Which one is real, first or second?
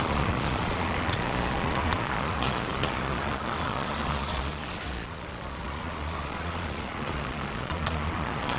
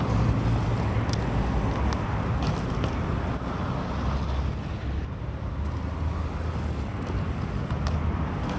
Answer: second